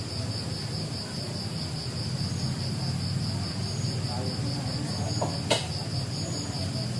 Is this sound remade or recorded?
recorded